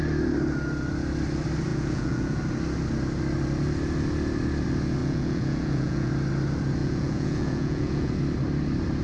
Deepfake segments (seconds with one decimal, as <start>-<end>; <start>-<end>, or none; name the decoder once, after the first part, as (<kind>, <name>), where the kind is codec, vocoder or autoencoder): 1.7-2.4 (vocoder, Vocos); 5.0-6.1; 6.8-8.1